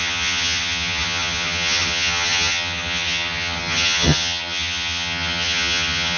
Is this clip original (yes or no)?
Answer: no